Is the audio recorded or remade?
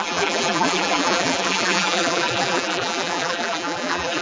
remade